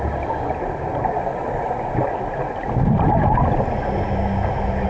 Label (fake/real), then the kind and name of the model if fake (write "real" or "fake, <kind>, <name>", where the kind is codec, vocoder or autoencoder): real